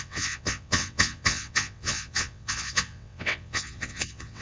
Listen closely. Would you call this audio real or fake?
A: fake